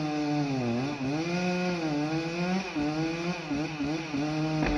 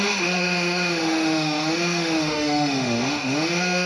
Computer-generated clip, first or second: second